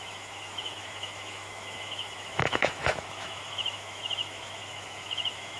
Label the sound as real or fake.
fake